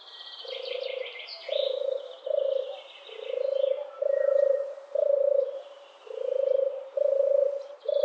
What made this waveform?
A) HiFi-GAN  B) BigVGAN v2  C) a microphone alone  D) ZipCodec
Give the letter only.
B